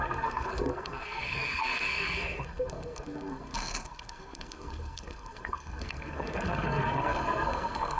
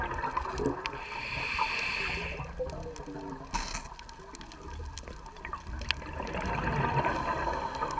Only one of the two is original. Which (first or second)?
second